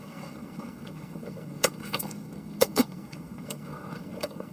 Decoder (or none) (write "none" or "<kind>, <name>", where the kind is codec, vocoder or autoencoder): codec, SNAC